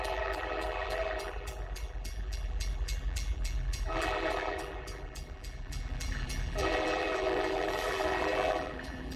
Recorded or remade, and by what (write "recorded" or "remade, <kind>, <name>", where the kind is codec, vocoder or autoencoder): remade, vocoder, BigVGAN v2